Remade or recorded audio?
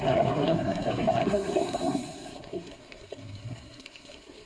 remade